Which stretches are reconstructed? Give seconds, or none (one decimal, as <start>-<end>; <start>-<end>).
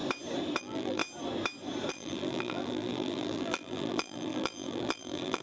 0.6-1.0; 1.9-5.4